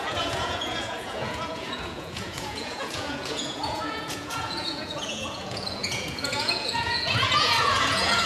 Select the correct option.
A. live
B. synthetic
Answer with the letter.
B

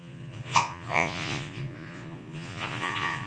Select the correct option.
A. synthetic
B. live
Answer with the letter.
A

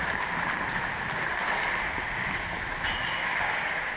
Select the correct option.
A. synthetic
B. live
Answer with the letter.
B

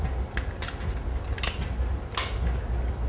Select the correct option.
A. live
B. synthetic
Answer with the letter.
A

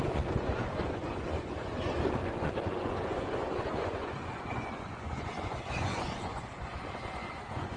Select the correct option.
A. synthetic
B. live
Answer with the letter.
A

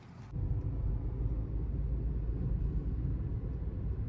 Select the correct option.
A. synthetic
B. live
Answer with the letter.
B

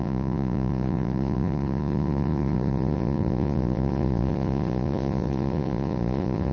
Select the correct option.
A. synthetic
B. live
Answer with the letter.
A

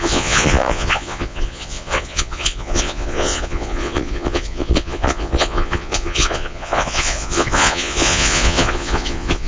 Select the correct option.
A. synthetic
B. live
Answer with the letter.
A